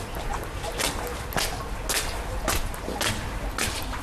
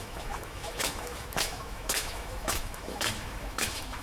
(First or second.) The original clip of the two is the first